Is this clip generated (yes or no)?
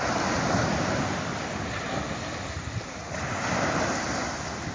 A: no